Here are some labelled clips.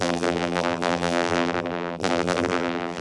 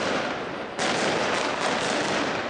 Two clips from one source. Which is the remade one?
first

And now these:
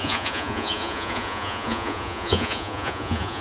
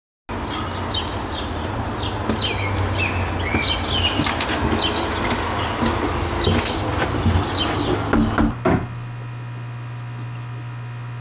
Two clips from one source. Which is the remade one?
first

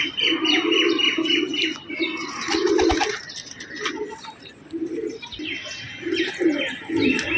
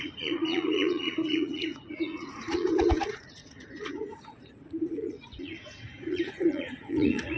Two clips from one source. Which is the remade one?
second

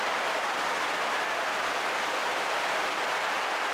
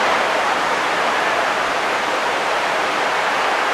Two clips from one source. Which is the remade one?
second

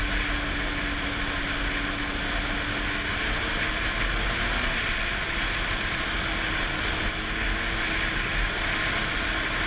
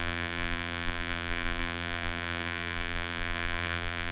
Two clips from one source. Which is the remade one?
second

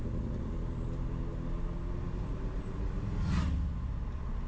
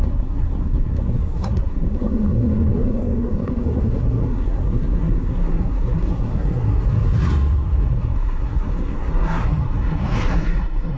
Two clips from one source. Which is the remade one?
second